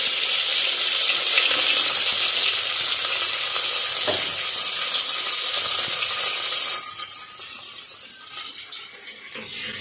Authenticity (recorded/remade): recorded